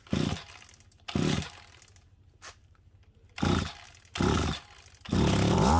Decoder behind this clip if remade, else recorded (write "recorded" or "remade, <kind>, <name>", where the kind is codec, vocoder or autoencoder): recorded